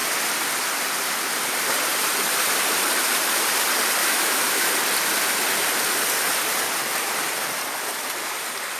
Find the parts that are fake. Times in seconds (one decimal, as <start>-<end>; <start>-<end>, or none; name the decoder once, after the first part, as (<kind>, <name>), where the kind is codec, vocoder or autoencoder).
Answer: 4.0-4.7 (autoencoder, DAC-VAE)